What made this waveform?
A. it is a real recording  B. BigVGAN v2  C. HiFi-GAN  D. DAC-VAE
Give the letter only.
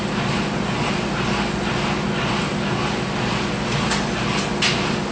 A